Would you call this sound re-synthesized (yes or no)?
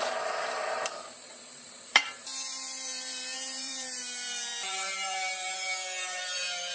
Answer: yes